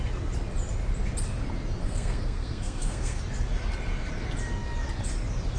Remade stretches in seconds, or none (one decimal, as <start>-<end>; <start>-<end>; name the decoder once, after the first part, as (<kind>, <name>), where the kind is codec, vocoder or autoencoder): 1.8-3.2 (codec, SNAC)